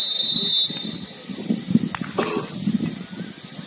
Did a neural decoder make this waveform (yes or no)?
no